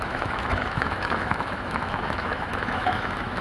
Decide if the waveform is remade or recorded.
remade